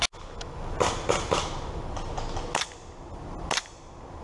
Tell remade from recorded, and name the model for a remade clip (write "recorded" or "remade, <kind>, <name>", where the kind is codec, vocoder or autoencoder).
recorded